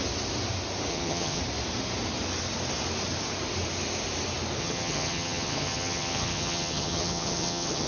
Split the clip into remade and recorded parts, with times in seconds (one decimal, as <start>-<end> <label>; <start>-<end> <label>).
0.0-0.9 recorded; 0.9-1.4 remade; 1.4-4.6 recorded; 4.6-7.9 remade